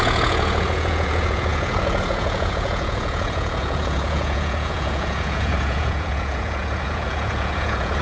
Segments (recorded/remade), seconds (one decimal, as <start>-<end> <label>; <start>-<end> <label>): 0.0-8.0 remade